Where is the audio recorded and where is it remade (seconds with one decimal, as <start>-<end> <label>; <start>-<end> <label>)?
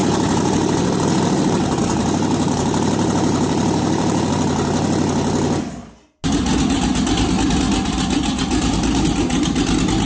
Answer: 0.0-4.3 remade; 4.3-8.6 recorded; 8.6-9.6 remade; 9.6-10.1 recorded